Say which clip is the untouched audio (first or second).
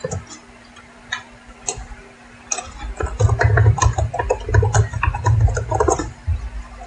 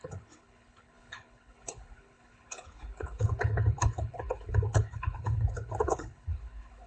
first